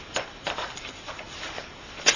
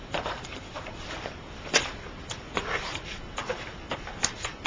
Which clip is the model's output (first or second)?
second